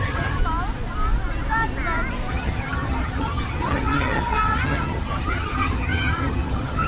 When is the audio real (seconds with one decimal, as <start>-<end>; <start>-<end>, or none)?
0.4-2.3